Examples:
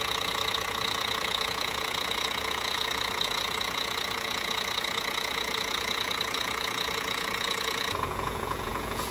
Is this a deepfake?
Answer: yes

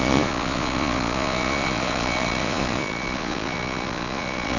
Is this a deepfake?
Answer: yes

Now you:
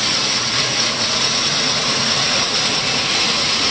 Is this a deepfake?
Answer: yes